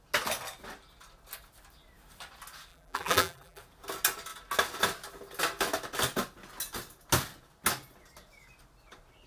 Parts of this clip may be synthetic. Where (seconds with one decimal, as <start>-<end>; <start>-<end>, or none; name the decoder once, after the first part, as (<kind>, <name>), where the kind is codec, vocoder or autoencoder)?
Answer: 2.7-3.6 (vocoder, BigVGAN v2)